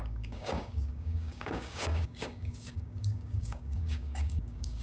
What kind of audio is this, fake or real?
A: fake